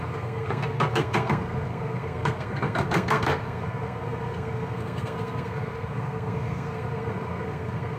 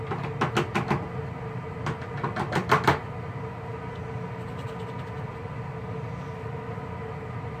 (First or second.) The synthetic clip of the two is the first